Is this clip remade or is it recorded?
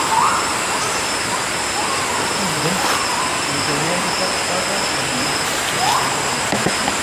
recorded